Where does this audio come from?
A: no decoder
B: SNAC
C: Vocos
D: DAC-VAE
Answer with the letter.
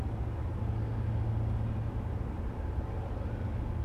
A